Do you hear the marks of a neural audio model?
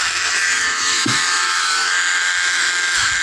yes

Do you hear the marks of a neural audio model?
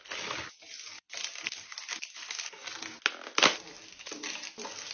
no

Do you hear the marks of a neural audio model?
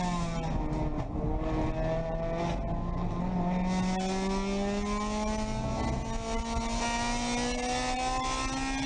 no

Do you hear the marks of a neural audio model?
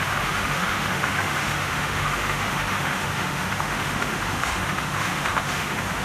yes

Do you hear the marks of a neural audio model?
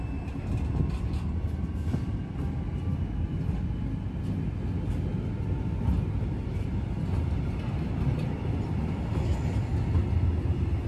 no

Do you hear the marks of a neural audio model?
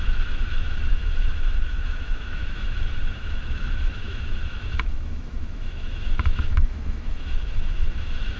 yes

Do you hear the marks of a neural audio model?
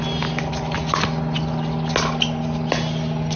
no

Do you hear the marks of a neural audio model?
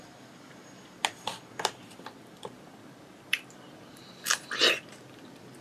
no